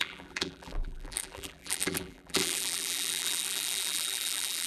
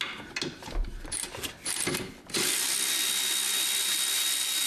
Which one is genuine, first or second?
second